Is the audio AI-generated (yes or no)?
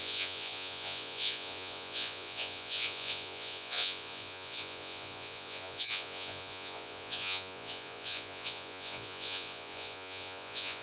yes